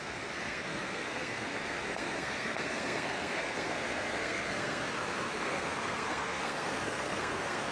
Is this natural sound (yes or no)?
no